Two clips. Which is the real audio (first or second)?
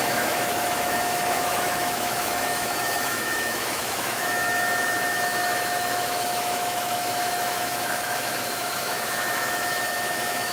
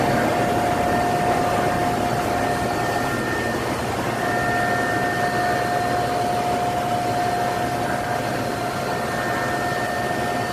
second